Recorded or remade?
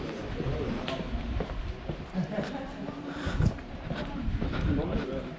remade